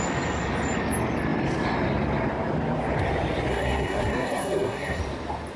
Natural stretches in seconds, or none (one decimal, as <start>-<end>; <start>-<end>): 0.0-3.5; 5.0-5.6